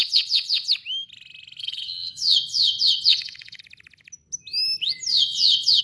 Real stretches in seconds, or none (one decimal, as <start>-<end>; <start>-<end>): 0.7-1.6; 3.6-5.1

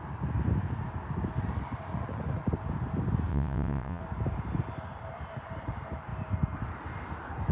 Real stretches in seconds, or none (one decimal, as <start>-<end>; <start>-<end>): 0.0-3.3; 4.0-7.5

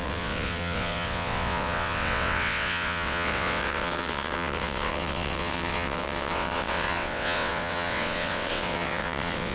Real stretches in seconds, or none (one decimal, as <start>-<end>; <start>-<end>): none

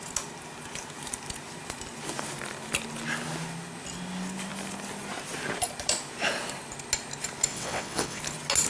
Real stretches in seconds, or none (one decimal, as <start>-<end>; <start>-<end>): 0.0-7.5; 8.2-8.7

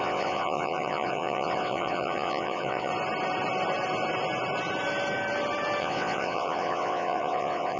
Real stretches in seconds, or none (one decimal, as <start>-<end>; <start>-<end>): 2.9-5.8

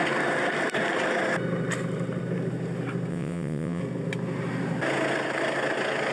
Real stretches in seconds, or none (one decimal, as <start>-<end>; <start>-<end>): 0.0-3.1; 3.8-6.1